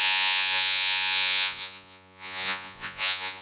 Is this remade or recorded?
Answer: remade